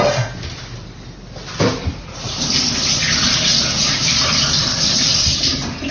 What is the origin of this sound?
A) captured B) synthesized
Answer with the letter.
A